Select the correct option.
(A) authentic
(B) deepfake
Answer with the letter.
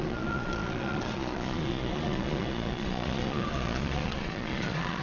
B